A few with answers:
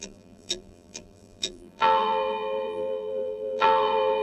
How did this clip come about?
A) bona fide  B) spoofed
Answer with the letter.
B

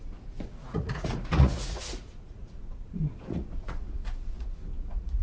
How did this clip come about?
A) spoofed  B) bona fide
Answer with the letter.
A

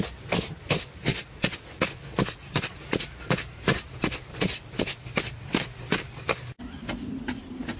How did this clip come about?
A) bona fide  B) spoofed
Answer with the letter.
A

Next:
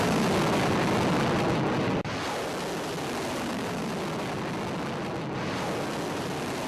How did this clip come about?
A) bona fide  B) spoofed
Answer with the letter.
A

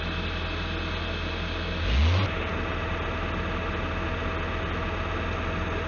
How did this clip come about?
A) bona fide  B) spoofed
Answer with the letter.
A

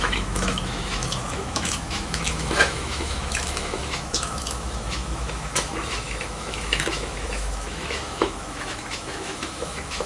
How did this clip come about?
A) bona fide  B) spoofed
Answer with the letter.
B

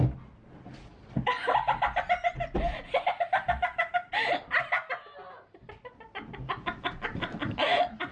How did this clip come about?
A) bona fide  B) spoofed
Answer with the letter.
A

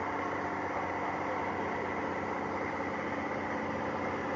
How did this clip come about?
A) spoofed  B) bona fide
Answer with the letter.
B